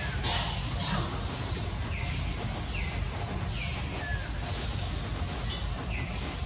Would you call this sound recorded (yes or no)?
yes